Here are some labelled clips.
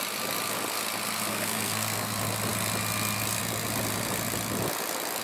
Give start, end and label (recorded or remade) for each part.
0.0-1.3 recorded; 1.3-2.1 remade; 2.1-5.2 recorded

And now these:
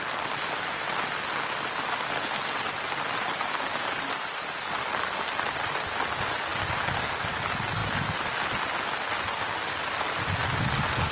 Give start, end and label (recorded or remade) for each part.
0.0-11.1 recorded

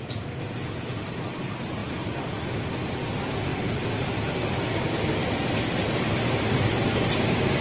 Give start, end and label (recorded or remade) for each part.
0.0-7.6 recorded

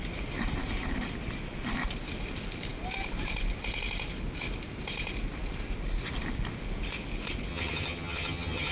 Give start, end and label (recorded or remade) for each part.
0.0-7.5 recorded; 7.5-8.7 remade